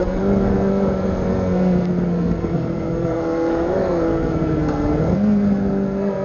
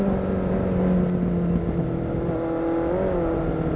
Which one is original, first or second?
second